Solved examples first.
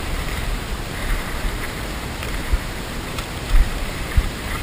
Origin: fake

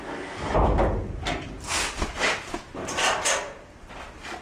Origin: real